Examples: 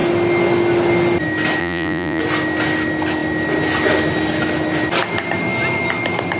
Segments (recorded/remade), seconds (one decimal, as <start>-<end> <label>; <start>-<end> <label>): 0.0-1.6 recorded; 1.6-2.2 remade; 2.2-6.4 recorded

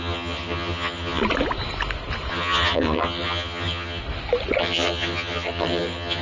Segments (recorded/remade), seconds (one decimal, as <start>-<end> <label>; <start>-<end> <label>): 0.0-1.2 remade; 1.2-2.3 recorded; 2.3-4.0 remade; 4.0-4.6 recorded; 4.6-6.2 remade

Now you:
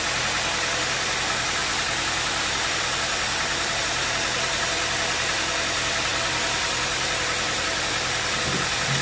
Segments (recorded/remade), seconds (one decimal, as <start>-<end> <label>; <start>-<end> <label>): 0.0-9.0 recorded

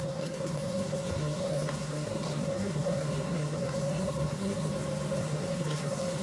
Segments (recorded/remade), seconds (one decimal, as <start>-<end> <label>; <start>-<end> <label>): 0.0-4.7 remade; 4.7-5.2 recorded; 5.2-6.2 remade

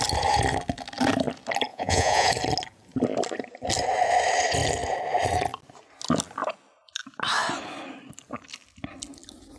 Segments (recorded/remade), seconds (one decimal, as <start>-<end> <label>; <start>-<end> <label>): 0.0-1.7 recorded; 1.7-2.3 remade; 2.3-9.6 recorded